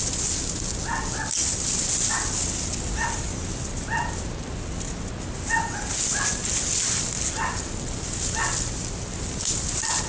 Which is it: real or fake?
real